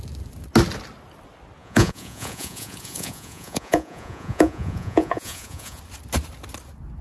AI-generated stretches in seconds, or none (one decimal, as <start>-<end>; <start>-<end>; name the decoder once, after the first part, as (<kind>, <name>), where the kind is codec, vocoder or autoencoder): 1.6-5.8 (vocoder, Vocos)